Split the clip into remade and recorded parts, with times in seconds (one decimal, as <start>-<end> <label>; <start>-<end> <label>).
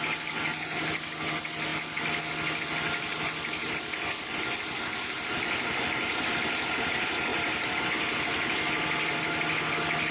0.0-7.3 recorded; 7.3-7.9 remade; 7.9-10.1 recorded